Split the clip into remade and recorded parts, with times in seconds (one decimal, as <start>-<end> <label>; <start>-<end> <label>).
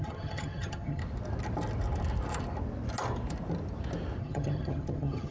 0.0-1.0 remade; 1.0-4.2 recorded; 4.2-5.3 remade